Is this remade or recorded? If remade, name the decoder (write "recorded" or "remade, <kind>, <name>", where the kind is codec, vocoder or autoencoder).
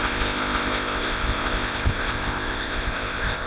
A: remade, codec, ZipCodec